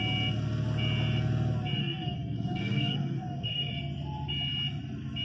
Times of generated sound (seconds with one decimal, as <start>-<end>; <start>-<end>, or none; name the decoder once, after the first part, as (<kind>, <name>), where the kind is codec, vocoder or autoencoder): 1.8-3.7 (codec, SNAC)